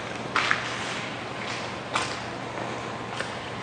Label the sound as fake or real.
real